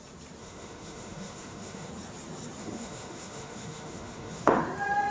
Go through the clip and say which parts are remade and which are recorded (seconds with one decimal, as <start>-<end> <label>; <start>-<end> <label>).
0.0-0.4 recorded; 0.4-1.9 remade; 1.9-2.6 recorded; 2.6-4.6 remade; 4.6-5.1 recorded